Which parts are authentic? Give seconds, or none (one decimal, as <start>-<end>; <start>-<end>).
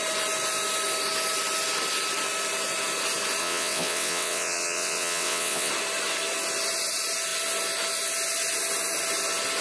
0.0-3.4; 5.7-9.6